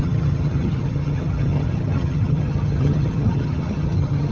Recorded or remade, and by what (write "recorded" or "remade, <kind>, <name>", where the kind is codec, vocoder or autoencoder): remade, vocoder, HiFi-GAN